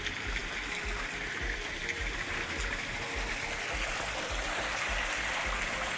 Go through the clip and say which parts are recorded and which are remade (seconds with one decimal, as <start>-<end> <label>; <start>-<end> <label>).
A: 0.0-6.0 recorded